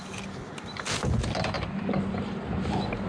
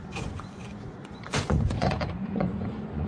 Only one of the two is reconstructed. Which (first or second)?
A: second